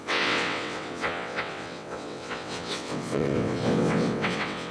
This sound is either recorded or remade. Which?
remade